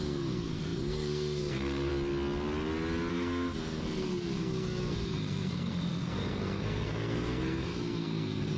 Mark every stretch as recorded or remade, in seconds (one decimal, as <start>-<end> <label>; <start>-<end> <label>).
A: 0.0-1.9 remade; 1.9-3.1 recorded; 3.1-8.6 remade